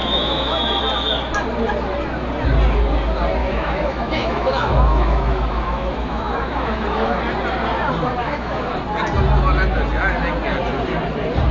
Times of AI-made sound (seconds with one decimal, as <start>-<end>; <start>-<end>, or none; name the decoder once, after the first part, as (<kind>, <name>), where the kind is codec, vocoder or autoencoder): 0.0-0.8 (autoencoder, DAC-VAE); 3.4-7.2; 8.2-8.7